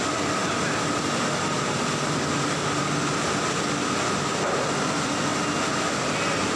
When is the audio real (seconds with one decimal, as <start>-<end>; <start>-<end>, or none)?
0.0-6.6